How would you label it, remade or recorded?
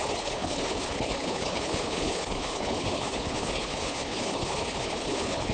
remade